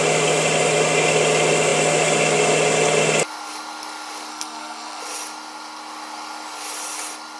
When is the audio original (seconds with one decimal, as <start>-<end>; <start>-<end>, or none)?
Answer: 0.0-4.3; 5.0-7.4